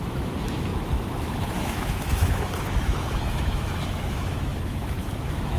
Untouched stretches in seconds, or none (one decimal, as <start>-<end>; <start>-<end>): none